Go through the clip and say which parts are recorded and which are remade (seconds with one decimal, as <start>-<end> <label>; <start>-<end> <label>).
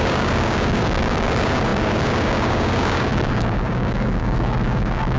0.0-5.2 remade